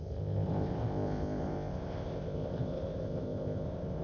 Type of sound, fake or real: fake